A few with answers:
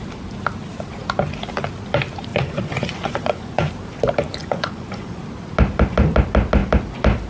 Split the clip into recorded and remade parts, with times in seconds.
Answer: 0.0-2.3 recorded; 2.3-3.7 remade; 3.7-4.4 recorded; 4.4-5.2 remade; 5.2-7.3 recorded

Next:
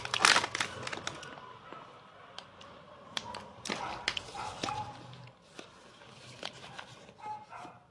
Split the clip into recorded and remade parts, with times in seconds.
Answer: 0.0-2.5 recorded; 2.5-3.8 remade; 3.8-7.9 recorded